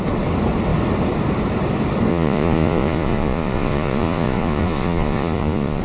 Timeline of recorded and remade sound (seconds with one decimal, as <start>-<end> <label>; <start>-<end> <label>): 0.0-2.1 recorded; 2.1-5.8 remade